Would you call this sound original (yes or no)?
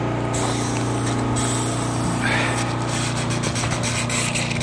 yes